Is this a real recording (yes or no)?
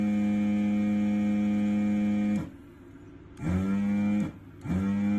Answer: yes